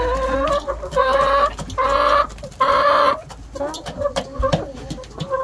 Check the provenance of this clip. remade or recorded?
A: recorded